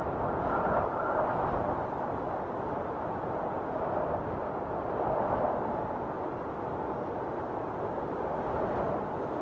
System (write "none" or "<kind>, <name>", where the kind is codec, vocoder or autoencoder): none